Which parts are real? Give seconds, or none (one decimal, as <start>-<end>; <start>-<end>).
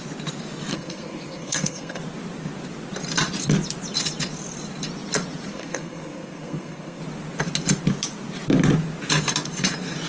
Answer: 0.0-0.7; 2.0-5.5; 7.0-10.1